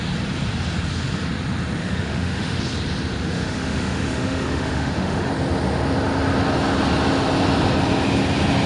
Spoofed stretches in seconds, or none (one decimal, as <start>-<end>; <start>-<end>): 1.8-2.6; 3.3-5.3